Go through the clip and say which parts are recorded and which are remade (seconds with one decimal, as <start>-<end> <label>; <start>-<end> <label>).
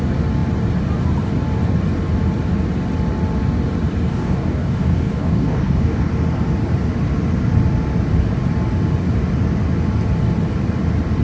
0.0-4.1 recorded; 4.1-6.1 remade; 6.1-11.2 recorded